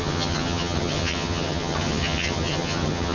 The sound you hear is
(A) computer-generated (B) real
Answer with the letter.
A